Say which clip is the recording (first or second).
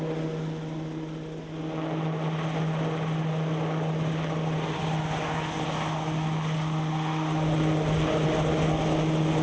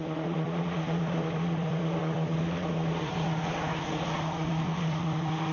first